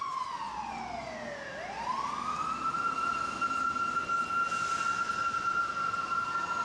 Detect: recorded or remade recorded